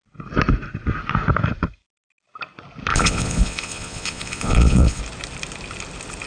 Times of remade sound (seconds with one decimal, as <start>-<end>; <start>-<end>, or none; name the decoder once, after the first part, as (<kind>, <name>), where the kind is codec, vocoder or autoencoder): 2.9-5.0 (vocoder, Vocos)